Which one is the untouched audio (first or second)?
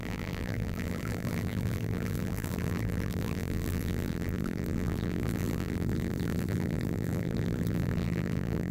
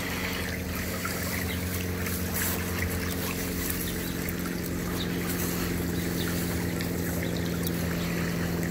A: second